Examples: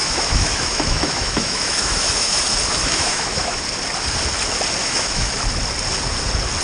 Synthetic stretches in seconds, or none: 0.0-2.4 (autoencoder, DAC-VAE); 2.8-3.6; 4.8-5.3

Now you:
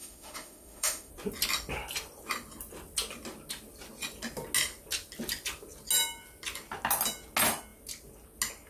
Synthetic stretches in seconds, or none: 0.0-1.1 (autoencoder, DAC-VAE)

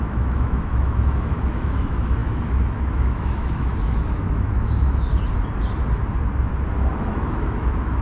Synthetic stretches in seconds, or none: 0.0-5.1 (autoencoder, DAC-VAE); 6.9-8.0

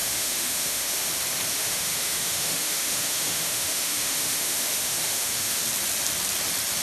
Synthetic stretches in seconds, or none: 0.0-1.1 (autoencoder, DAC-VAE); 1.5-5.6